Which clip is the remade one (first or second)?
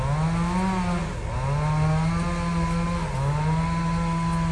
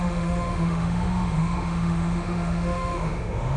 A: second